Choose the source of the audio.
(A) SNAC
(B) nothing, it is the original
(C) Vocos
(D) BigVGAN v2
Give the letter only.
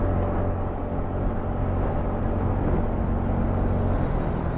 B